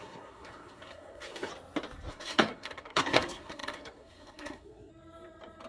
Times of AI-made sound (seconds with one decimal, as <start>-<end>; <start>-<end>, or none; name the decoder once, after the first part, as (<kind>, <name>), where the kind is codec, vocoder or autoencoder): 0.0-1.5 (codec, SNAC); 2.1-4.9